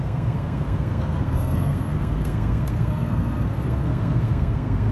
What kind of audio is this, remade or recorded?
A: remade